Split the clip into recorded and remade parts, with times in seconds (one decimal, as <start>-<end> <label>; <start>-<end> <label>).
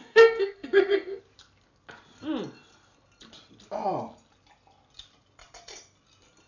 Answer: 0.0-1.2 remade; 1.2-6.5 recorded